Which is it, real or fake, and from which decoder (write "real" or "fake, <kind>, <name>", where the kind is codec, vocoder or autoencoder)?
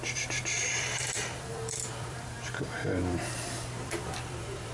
fake, vocoder, BigVGAN v2